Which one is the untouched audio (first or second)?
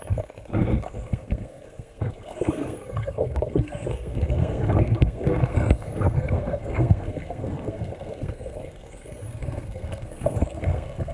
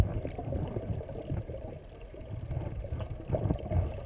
second